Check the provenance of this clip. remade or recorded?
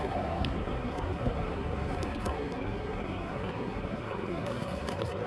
remade